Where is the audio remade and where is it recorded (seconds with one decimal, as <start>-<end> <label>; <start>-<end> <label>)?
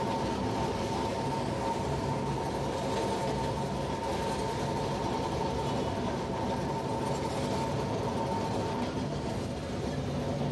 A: 0.0-8.6 recorded; 8.6-9.3 remade; 9.3-10.5 recorded